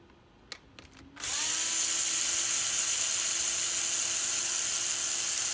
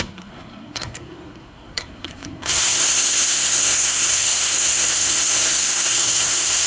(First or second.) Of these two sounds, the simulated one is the second